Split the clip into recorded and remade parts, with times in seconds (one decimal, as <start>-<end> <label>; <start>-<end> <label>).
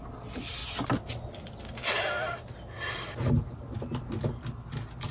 0.0-5.1 recorded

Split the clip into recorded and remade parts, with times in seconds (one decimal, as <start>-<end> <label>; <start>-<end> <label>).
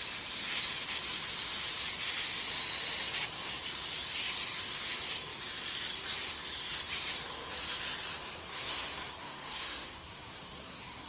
0.0-8.4 recorded; 8.4-11.1 remade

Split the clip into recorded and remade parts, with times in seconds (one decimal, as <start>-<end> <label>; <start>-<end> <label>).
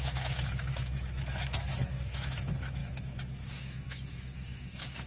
0.0-5.1 remade